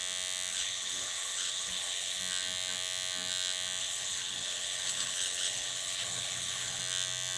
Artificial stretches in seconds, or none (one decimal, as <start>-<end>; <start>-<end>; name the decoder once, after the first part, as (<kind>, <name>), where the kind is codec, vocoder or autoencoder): 0.5-2.2 (codec, HILCodec); 3.8-6.8